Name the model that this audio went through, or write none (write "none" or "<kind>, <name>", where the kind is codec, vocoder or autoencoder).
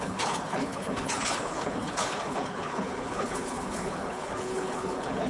codec, HILCodec